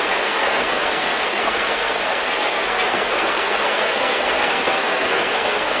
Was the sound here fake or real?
fake